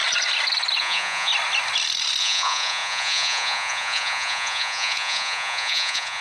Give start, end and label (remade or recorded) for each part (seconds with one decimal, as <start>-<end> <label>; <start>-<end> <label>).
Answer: 0.0-0.8 recorded; 0.8-1.3 remade; 1.3-2.2 recorded; 2.2-6.2 remade